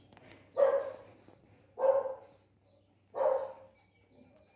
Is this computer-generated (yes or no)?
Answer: no